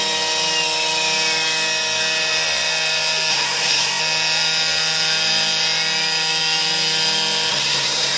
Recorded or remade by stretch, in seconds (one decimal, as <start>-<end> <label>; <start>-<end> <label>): 0.0-3.3 recorded; 3.3-4.0 remade; 4.0-7.5 recorded; 7.5-8.2 remade